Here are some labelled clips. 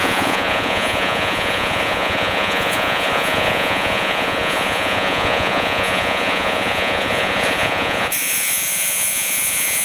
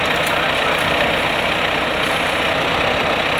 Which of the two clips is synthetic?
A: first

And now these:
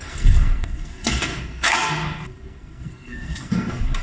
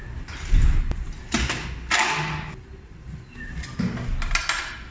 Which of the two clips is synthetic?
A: first